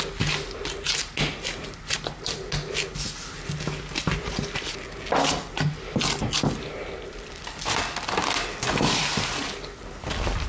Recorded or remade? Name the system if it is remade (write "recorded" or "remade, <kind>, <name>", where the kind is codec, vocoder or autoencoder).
recorded